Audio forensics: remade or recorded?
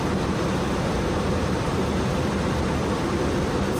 recorded